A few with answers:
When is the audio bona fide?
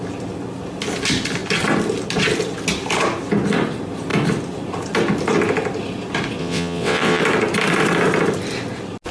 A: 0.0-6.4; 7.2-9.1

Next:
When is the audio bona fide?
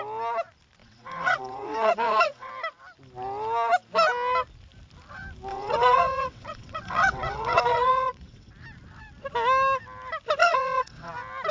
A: 0.0-0.8; 2.5-5.5; 8.5-10.4; 11.1-11.5